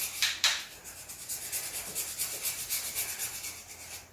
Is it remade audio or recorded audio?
recorded